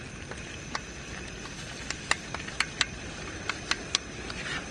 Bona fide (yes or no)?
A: yes